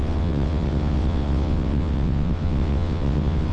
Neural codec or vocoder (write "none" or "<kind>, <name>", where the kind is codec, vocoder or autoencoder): vocoder, WaveNeXt